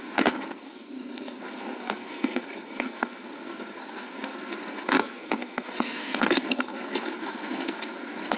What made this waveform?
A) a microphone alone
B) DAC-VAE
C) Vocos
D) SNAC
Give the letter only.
D